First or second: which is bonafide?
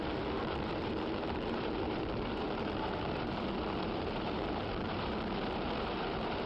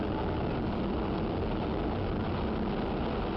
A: second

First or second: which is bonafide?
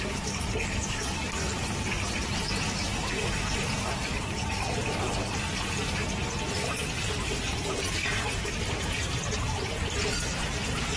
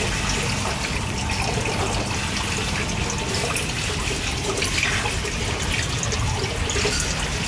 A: second